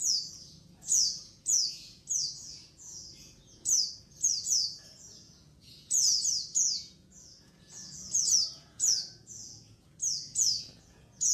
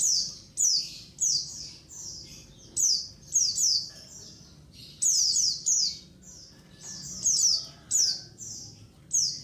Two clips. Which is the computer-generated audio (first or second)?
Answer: first